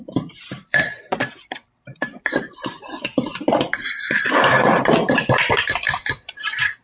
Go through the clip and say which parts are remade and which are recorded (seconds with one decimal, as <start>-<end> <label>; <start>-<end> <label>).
0.0-6.8 remade